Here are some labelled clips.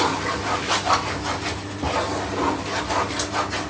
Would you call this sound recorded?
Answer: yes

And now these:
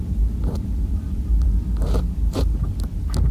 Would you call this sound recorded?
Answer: no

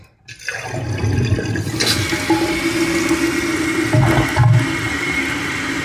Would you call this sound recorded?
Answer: yes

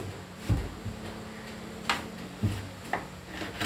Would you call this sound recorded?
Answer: yes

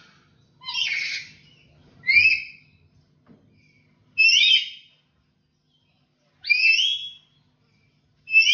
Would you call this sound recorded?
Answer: yes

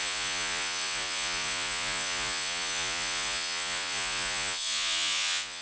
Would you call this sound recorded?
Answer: no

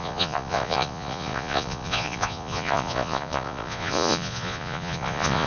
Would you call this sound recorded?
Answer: no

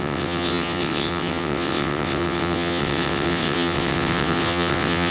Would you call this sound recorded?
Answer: no